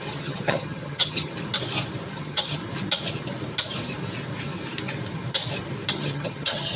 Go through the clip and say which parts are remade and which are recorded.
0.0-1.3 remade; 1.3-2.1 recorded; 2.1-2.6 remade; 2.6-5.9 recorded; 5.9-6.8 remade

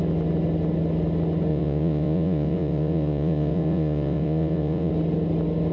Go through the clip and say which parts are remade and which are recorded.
0.0-1.5 recorded; 1.5-4.9 remade; 4.9-5.7 recorded

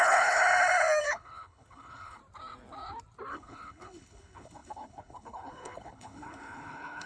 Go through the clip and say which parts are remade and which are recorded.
0.0-0.4 remade; 0.4-1.0 recorded; 1.0-2.2 remade; 2.2-3.3 recorded; 3.3-7.1 remade

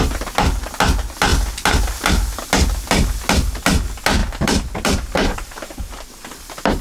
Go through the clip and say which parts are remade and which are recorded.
0.0-4.2 recorded; 4.2-6.3 remade; 6.3-6.8 recorded

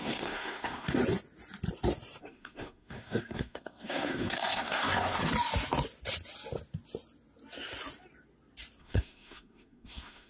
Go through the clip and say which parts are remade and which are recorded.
0.0-1.0 remade; 1.0-2.2 recorded; 2.2-5.2 remade; 5.2-8.8 recorded; 8.8-10.3 remade